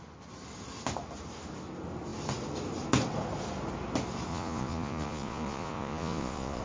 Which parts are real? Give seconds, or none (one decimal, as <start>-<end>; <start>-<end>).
0.0-4.3